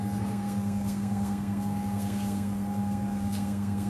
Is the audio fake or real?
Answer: fake